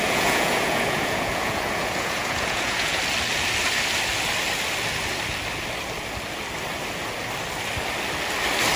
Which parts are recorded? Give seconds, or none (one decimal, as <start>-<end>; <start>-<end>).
3.0-8.8